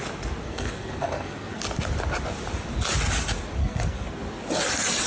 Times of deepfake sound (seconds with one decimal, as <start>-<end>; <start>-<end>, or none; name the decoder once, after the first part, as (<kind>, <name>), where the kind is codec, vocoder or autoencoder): 0.4-1.6 (codec, SNAC); 3.6-4.2